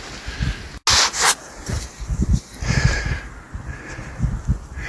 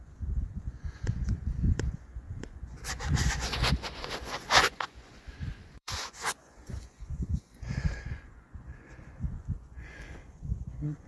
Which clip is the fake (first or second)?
second